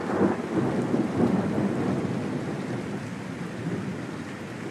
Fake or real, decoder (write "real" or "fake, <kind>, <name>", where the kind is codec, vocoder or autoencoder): real